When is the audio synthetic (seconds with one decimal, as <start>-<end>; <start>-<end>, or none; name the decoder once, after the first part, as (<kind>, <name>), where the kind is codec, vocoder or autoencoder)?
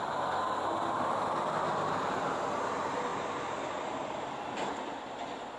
none